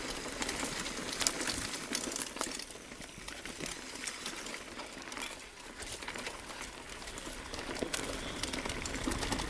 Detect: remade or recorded recorded